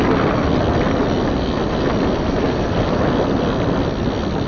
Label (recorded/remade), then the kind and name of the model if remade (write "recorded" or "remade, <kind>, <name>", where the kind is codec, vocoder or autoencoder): recorded